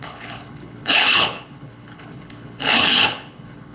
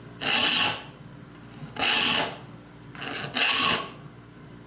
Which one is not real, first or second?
first